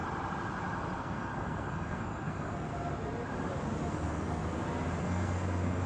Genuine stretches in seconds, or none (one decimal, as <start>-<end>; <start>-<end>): 0.0-1.0; 2.7-3.9; 4.4-5.0